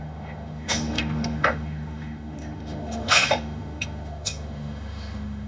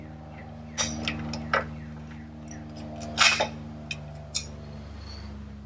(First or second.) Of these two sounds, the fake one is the first